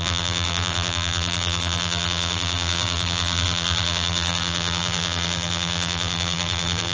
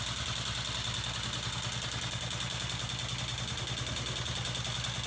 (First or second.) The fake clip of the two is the first